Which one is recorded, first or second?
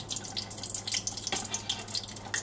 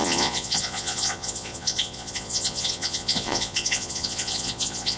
first